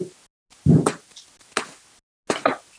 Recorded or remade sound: recorded